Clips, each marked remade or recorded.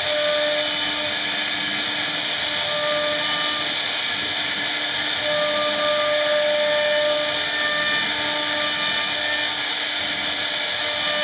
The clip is recorded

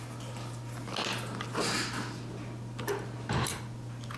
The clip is recorded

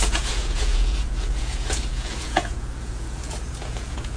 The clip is remade